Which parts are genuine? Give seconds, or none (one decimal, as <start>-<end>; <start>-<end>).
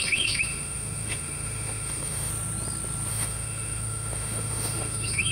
2.3-3.1